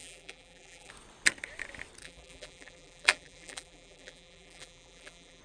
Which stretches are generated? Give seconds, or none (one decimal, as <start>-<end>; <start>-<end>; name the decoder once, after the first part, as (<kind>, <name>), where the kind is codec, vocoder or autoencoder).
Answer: 0.0-0.9 (vocoder, BigVGAN v2); 2.0-5.4